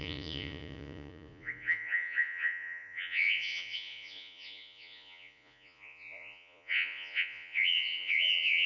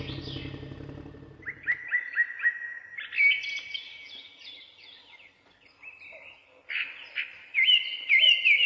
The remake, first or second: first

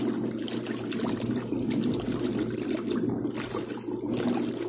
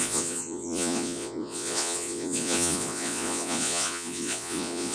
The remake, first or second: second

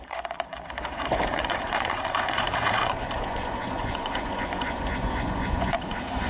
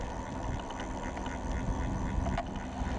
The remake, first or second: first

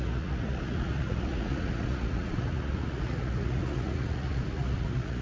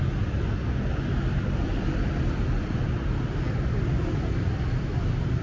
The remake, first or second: first